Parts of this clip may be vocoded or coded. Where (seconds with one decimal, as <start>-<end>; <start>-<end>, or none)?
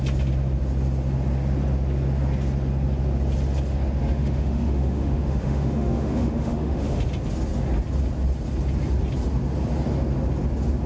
4.0-7.0